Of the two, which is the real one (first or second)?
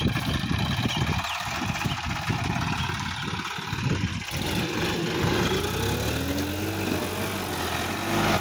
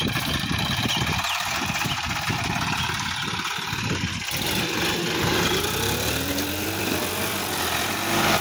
first